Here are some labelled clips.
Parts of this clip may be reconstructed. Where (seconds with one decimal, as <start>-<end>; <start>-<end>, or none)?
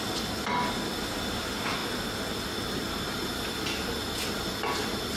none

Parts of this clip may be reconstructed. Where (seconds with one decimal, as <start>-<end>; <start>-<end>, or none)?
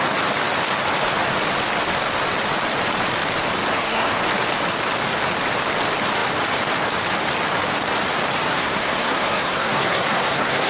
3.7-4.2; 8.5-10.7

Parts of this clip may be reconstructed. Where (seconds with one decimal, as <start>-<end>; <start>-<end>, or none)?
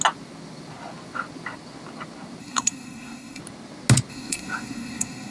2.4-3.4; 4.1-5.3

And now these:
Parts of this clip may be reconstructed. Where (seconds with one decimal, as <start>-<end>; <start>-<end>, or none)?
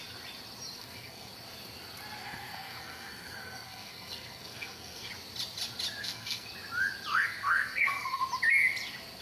0.8-1.3; 2.2-5.1; 6.0-6.5; 7.1-8.2